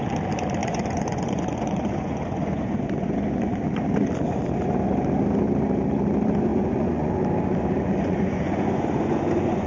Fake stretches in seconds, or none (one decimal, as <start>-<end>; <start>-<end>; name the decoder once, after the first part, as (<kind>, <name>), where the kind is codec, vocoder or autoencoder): 0.6-3.6 (vocoder, Vocos); 6.5-7.1; 8.0-9.7